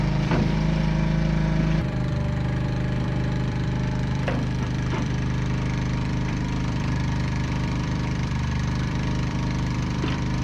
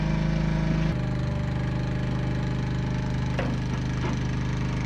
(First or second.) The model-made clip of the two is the first